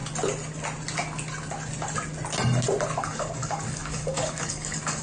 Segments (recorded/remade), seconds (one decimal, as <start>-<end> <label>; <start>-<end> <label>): 0.0-3.0 recorded; 3.0-5.0 remade